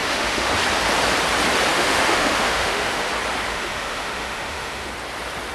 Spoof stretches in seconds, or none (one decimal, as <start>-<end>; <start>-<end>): 0.0-0.5; 1.7-3.1; 3.5-4.9